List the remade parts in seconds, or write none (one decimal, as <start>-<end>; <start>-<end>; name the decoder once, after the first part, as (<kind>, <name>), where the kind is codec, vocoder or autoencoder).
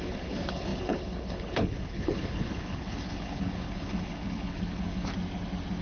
0.0-5.1 (codec, HILCodec)